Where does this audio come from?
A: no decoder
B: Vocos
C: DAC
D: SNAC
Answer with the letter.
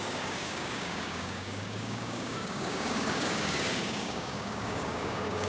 C